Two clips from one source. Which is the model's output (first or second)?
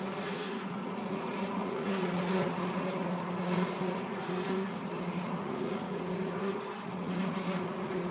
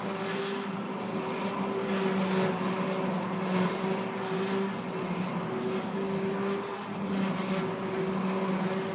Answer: first